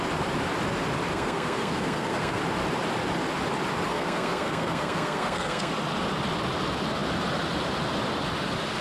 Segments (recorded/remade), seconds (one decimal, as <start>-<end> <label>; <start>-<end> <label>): 0.0-1.1 recorded; 1.1-2.4 remade; 2.4-3.9 recorded; 3.9-5.7 remade; 5.7-8.8 recorded

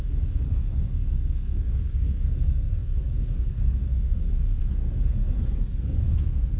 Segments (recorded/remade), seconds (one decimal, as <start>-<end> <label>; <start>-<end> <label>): 0.0-6.6 remade

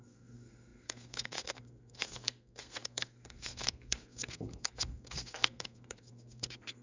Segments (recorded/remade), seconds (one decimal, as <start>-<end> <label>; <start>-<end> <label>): 0.0-6.8 remade

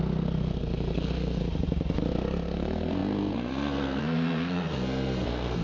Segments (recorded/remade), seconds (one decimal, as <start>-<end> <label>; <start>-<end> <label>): 0.0-1.4 remade; 1.4-2.1 recorded; 2.1-5.6 remade

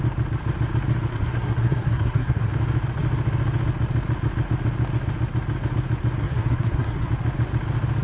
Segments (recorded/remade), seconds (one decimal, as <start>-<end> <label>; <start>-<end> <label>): 0.0-1.1 recorded; 1.1-2.5 remade; 2.5-6.2 recorded; 6.2-7.1 remade; 7.1-8.0 recorded

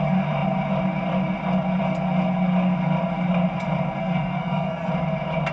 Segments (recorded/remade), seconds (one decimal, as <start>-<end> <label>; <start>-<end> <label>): 0.0-4.0 recorded; 4.0-4.9 remade; 4.9-5.5 recorded

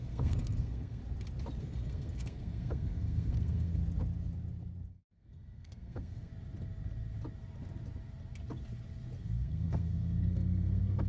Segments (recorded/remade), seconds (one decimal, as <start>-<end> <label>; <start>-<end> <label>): 0.0-1.0 remade; 1.0-1.6 recorded; 1.6-3.8 remade; 3.8-4.9 recorded; 4.9-6.3 remade; 6.3-9.2 recorded; 9.2-11.1 remade